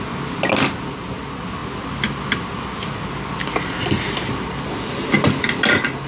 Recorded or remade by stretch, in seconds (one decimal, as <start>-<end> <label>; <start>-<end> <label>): 0.0-6.1 recorded